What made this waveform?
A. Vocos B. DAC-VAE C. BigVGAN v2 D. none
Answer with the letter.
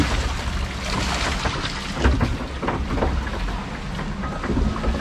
D